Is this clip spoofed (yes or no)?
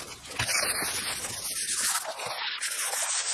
no